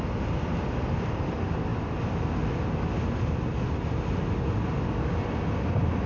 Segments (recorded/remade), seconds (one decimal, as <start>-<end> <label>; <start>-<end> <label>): 0.0-6.1 recorded